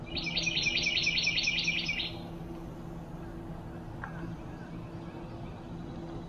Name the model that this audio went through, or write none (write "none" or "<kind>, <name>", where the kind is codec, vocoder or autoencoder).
none